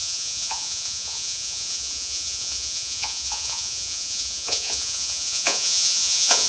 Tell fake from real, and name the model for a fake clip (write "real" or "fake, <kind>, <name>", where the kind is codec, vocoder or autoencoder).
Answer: fake, vocoder, Vocos